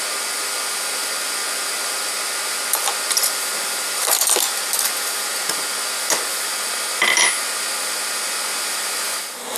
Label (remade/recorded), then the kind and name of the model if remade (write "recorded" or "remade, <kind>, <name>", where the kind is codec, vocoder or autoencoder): recorded